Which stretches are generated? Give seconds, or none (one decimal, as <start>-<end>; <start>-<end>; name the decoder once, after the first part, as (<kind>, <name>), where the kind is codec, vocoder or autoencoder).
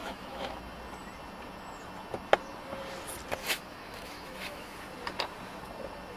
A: 0.0-0.6 (autoencoder, DAC-VAE); 3.4-4.8